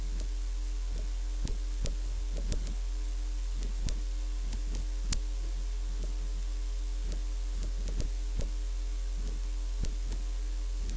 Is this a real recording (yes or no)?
yes